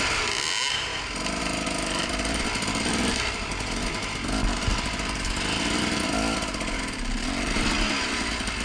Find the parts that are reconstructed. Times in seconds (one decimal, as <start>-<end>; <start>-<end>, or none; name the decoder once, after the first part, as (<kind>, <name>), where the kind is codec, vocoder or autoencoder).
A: 2.0-3.5 (vocoder, BigVGAN v2); 4.7-6.8